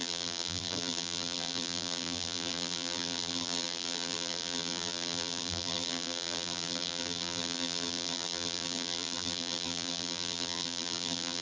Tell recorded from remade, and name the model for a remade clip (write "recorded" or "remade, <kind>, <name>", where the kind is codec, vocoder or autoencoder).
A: remade, vocoder, BigVGAN v2